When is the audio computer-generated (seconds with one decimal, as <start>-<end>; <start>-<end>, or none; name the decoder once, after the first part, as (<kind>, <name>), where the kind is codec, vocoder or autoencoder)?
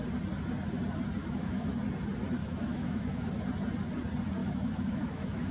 1.2-1.7 (autoencoder, DAC-VAE); 2.4-3.3; 4.4-5.5